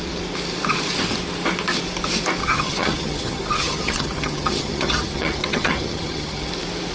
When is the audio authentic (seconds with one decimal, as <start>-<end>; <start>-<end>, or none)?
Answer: 0.0-2.4; 6.5-6.9